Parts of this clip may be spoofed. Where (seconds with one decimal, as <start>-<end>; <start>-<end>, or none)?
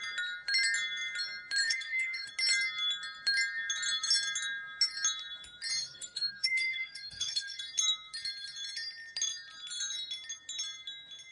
1.6-2.3; 5.8-7.6